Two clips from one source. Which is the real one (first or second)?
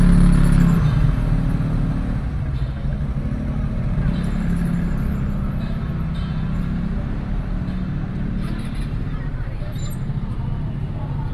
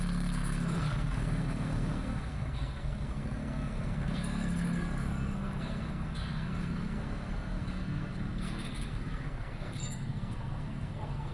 first